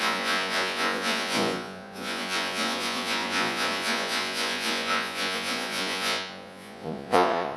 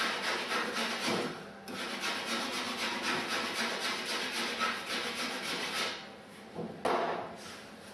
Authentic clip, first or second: second